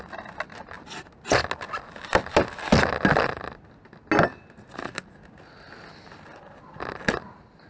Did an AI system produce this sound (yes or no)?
no